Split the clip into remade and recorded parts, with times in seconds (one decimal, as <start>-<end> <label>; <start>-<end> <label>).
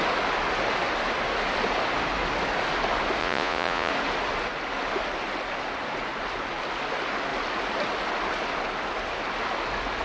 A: 0.0-3.2 recorded; 3.2-3.9 remade; 3.9-10.0 recorded